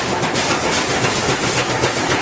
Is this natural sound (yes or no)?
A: yes